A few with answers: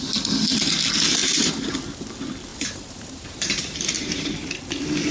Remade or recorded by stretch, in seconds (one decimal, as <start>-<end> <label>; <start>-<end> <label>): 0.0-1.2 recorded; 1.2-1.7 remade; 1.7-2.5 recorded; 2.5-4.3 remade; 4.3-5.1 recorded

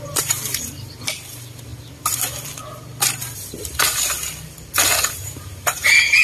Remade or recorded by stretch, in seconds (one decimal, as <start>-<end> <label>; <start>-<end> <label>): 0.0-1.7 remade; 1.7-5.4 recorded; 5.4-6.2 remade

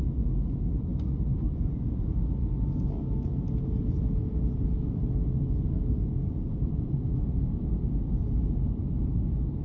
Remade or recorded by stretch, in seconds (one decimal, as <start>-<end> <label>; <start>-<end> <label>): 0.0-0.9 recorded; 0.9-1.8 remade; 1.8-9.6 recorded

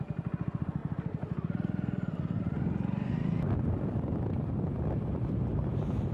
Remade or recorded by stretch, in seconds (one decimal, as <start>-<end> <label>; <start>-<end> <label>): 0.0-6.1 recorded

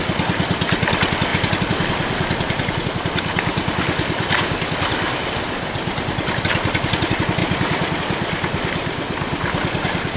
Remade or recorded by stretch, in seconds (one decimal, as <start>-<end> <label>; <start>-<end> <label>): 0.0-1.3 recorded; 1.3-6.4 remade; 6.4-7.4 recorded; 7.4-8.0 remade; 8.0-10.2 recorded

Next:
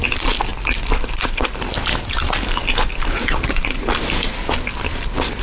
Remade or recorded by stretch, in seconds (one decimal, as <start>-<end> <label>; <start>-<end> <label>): 0.0-5.4 recorded

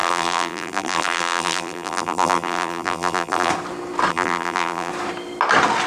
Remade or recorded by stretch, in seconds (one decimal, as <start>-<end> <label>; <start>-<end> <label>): 0.0-3.5 remade; 3.5-4.1 recorded; 4.1-4.9 remade; 4.9-5.9 recorded